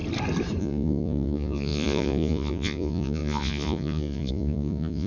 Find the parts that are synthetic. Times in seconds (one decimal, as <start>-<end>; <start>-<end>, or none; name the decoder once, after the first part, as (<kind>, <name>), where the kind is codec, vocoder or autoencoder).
0.6-5.1 (vocoder, Vocos)